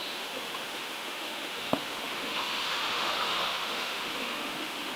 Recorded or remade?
remade